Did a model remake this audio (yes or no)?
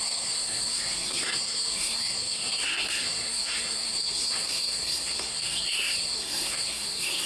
yes